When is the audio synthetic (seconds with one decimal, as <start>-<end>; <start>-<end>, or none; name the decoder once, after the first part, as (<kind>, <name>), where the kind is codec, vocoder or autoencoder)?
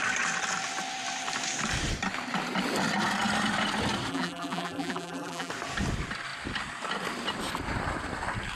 4.1-5.5 (vocoder, BigVGAN v2)